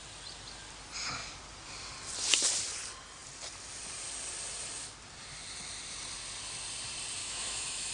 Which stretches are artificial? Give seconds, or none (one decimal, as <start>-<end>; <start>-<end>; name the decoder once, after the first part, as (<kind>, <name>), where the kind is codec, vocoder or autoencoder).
7.2-7.9 (autoencoder, DAC-VAE)